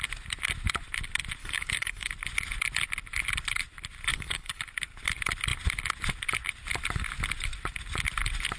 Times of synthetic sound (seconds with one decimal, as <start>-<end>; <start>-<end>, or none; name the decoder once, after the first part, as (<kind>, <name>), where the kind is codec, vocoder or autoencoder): 1.4-2.1 (codec, DAC); 4.1-4.6